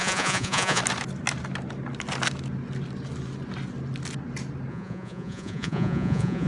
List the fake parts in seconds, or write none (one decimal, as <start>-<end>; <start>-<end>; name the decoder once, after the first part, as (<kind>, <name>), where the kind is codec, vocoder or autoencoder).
0.0-0.8 (vocoder, Vocos); 4.7-6.5